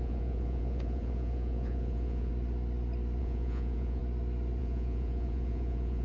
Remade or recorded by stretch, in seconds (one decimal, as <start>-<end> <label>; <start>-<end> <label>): 0.0-2.3 remade; 2.3-3.2 recorded; 3.2-4.0 remade; 4.0-4.6 recorded; 4.6-6.0 remade